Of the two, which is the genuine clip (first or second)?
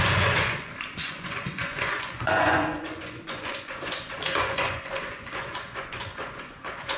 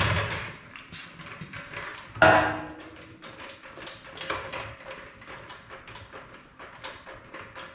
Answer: second